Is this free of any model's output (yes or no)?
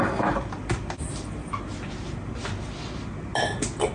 yes